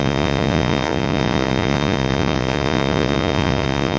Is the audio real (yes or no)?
no